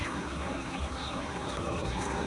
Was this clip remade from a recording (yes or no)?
yes